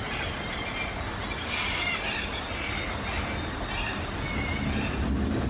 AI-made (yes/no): no